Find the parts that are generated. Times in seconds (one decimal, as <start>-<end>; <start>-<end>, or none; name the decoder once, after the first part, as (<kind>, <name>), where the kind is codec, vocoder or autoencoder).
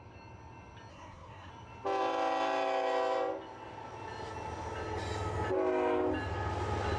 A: 0.9-1.5 (codec, SNAC)